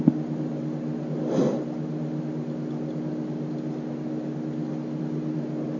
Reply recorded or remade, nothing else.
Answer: recorded